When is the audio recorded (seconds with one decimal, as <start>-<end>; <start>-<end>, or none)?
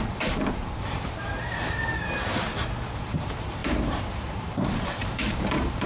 2.0-3.0